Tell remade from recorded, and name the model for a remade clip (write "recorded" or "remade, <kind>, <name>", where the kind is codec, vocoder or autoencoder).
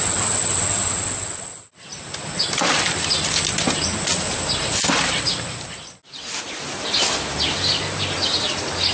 recorded